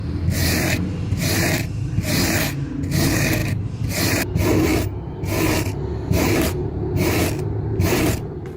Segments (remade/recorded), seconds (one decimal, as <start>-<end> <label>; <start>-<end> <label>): 0.0-8.6 recorded